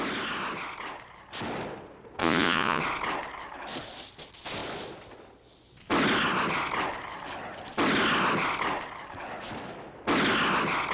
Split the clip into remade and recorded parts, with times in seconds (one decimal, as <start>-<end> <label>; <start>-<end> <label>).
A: 0.0-2.2 recorded; 2.2-2.8 remade; 2.8-10.9 recorded